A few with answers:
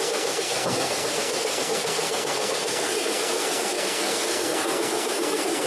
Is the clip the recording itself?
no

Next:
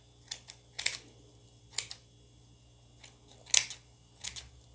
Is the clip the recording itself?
yes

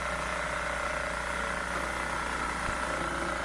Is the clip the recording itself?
yes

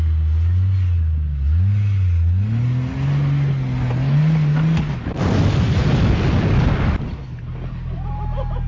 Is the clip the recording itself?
yes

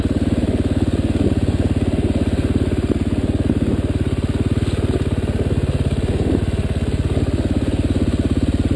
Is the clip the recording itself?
yes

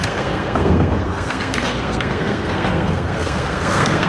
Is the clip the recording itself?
no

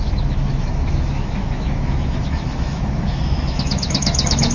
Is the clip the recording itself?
no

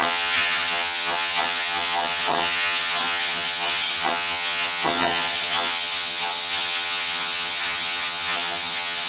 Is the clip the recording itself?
no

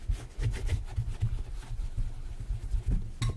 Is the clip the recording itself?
yes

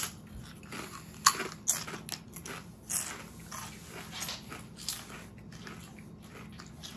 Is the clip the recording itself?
yes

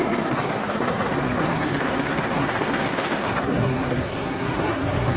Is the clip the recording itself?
no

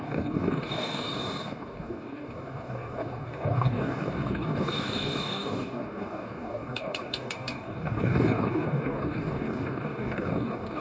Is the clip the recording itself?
no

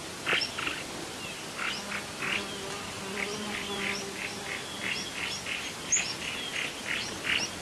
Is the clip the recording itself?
yes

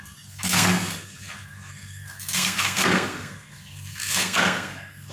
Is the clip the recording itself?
no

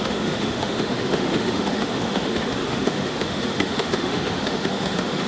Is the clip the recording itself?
no